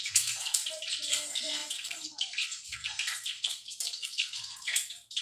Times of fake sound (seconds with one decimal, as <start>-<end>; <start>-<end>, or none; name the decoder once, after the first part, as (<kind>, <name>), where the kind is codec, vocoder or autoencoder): 0.0-0.6 (codec, SNAC); 1.1-5.2

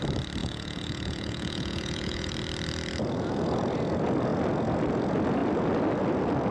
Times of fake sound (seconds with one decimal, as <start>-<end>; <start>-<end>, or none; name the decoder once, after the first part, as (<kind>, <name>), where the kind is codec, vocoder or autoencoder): 0.4-2.3 (vocoder, Vocos)

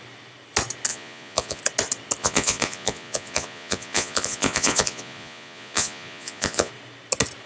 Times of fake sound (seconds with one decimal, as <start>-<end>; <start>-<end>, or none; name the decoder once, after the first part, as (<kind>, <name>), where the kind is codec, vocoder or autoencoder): 0.9-1.6 (vocoder, Vocos); 2.2-6.7

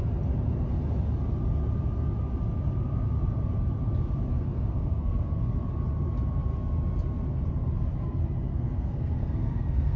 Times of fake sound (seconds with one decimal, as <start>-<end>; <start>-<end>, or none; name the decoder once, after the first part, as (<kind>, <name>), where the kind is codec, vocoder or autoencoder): 4.3-5.6 (codec, SNAC); 8.5-10.0

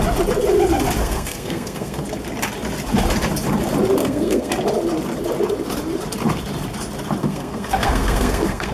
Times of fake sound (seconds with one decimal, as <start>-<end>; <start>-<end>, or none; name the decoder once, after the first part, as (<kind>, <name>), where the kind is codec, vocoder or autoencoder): 1.0-2.0 (codec, SNAC); 4.0-4.5; 7.2-8.7